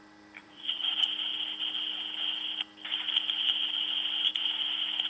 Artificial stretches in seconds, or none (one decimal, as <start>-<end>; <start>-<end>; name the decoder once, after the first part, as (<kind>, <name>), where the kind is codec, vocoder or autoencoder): 0.4-0.9 (vocoder, Vocos)